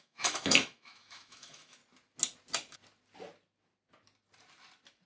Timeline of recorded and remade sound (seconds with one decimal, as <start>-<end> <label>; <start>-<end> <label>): 0.0-1.8 remade; 1.8-5.1 recorded